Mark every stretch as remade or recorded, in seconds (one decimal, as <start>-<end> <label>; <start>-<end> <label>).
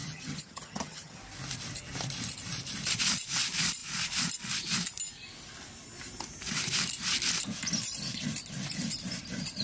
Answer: 0.0-1.2 remade; 1.2-9.6 recorded